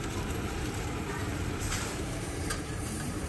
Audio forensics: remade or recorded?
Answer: remade